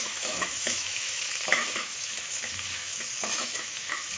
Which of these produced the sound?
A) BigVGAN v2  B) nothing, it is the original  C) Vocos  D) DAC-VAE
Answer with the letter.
D